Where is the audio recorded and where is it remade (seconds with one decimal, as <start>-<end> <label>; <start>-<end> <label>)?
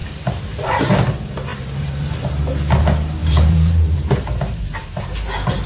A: 0.0-0.9 remade; 0.9-1.5 recorded; 1.5-2.3 remade; 2.3-3.2 recorded; 3.2-5.0 remade; 5.0-5.7 recorded